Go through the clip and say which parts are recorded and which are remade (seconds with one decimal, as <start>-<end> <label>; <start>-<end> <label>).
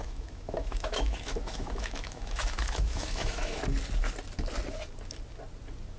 0.0-3.6 remade; 3.6-6.0 recorded